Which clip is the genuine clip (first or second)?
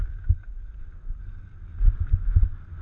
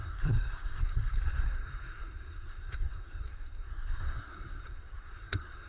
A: first